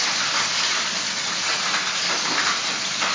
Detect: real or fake real